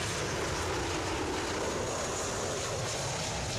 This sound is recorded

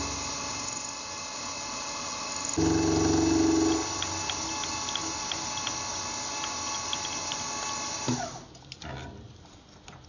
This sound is recorded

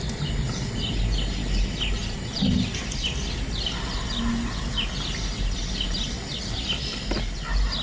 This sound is recorded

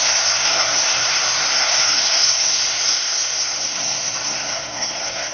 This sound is remade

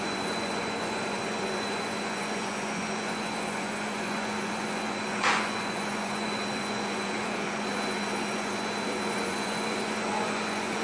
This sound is remade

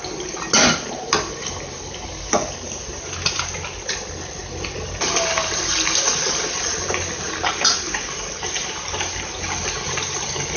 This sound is recorded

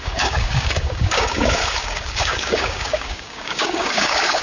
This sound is remade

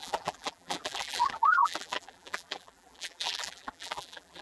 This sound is remade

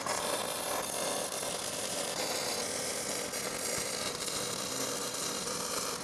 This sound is recorded